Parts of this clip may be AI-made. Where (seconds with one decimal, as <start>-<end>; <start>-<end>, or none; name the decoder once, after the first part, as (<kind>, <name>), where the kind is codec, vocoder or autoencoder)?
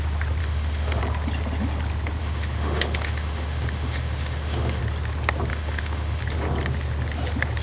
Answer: 0.4-1.0 (autoencoder, DAC-VAE); 2.2-4.8; 5.5-6.2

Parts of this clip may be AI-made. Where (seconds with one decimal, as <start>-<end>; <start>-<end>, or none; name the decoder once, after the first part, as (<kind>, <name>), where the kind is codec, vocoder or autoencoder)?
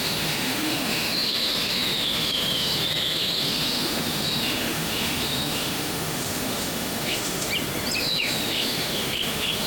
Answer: 0.0-7.5 (autoencoder, DAC-VAE); 8.0-9.7